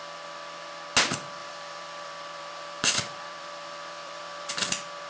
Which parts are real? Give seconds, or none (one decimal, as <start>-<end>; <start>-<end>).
0.0-1.4; 4.5-5.1